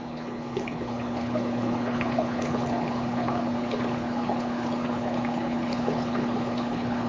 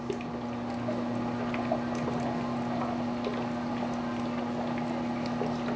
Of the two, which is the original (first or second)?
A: second